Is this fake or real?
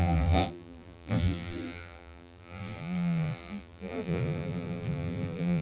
fake